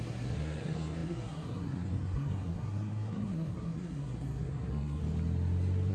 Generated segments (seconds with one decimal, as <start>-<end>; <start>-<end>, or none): 0.0-5.0